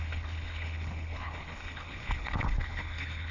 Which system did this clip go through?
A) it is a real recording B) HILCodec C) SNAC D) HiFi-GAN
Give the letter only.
B